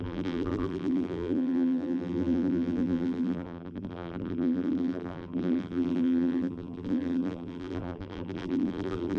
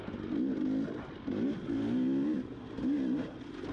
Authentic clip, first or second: second